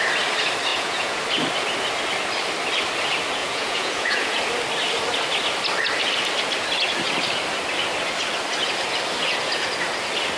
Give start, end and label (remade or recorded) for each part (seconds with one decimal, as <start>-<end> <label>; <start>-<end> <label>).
0.0-0.7 recorded; 0.7-1.2 remade; 1.2-3.4 recorded; 3.4-4.4 remade; 4.4-10.4 recorded